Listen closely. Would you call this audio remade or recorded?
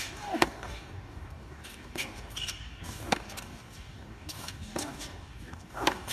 remade